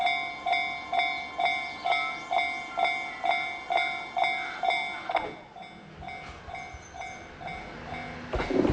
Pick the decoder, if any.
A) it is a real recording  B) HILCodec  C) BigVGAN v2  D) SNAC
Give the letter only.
A